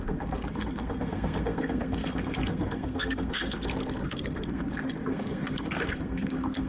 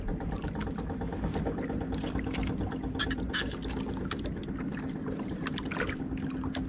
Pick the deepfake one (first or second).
first